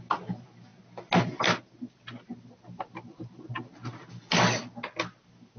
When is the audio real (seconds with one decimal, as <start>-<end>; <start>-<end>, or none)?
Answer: 0.0-5.6